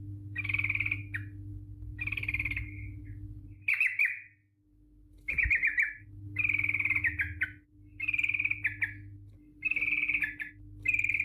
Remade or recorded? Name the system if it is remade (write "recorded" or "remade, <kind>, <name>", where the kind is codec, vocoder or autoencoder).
recorded